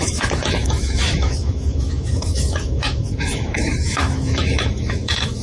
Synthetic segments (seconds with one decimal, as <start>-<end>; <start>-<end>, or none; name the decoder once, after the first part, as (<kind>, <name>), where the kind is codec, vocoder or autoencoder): 0.0-5.4 (autoencoder, DAC-VAE)